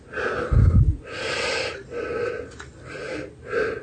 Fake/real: real